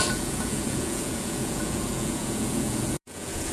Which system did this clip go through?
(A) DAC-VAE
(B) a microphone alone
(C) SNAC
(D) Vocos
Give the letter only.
D